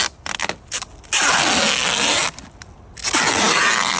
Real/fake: real